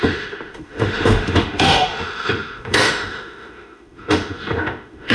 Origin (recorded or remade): remade